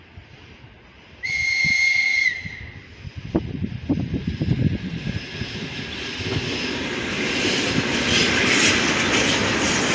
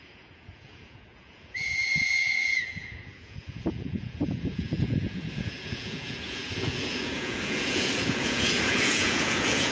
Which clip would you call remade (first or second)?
second